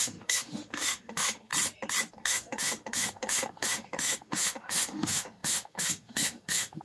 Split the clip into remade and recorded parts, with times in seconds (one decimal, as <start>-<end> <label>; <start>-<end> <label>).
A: 0.0-1.5 remade; 1.5-2.1 recorded; 2.1-6.8 remade